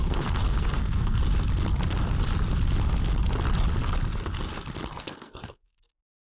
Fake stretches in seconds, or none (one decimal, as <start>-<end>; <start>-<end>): 0.0-1.2; 4.9-6.2